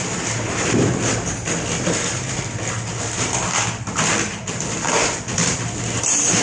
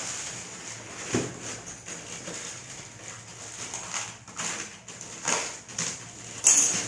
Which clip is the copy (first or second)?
first